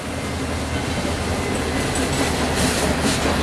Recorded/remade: recorded